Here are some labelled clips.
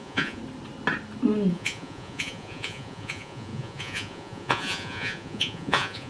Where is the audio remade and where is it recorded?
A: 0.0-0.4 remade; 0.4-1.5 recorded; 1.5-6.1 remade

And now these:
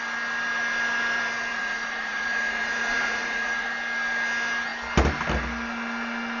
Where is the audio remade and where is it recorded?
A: 0.0-1.5 recorded; 1.5-3.7 remade; 3.7-6.4 recorded